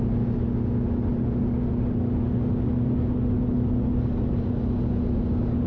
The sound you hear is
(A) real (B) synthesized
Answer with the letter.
A